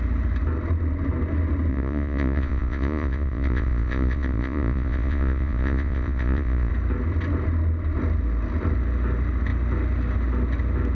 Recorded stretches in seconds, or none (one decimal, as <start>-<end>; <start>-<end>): 0.0-1.7; 6.7-10.9